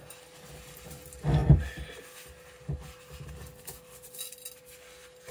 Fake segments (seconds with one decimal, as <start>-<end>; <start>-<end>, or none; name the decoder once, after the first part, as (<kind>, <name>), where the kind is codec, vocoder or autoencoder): none